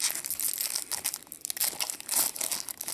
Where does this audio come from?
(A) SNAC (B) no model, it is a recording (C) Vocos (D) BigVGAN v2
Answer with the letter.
B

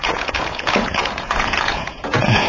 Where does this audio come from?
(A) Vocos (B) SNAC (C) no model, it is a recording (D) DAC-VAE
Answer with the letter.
A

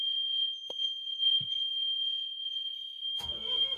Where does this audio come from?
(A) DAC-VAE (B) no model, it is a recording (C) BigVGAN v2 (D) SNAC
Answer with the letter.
D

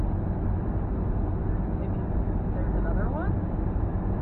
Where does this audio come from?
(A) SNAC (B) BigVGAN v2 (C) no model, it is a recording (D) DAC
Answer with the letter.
C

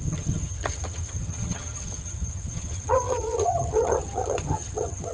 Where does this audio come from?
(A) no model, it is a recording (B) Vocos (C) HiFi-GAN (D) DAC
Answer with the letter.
C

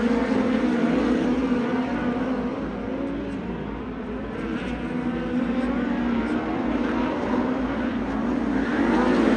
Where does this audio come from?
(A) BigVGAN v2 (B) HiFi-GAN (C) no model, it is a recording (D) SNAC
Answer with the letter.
C